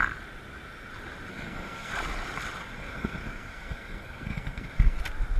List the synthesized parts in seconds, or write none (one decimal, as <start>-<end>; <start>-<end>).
1.3-1.9; 2.6-5.0